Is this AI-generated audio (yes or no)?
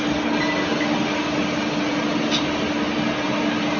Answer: no